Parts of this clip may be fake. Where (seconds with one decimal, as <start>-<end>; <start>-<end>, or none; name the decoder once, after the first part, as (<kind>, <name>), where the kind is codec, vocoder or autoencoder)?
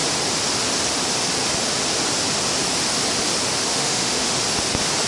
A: 3.7-4.4 (autoencoder, DAC-VAE)